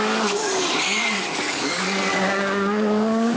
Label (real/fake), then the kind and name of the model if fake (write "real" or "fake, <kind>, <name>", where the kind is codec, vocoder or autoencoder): fake, codec, DAC